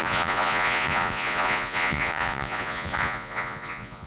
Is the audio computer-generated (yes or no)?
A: yes